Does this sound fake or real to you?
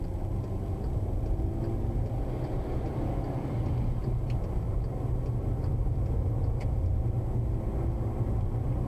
real